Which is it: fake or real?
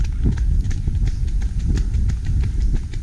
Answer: real